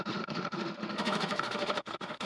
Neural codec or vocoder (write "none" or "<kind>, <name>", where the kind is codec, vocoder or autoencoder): autoencoder, DAC-VAE